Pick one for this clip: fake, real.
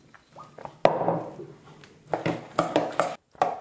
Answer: real